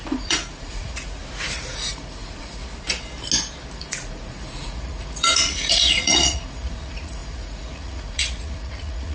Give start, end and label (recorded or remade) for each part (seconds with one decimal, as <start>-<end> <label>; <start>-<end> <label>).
0.0-1.2 remade; 1.2-1.7 recorded; 1.7-2.6 remade; 2.6-3.8 recorded; 3.8-9.1 remade